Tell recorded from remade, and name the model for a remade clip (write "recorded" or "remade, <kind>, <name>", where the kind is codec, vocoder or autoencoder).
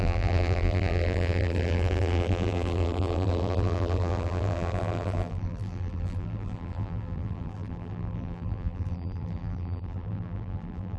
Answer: remade, vocoder, BigVGAN v2